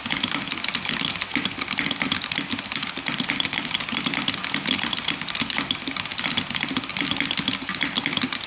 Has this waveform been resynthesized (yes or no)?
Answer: no